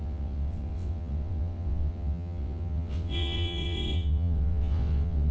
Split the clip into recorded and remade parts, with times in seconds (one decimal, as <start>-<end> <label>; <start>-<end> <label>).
0.0-5.3 remade